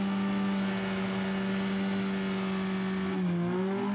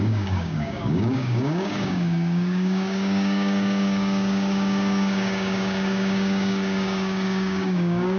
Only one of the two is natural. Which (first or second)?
first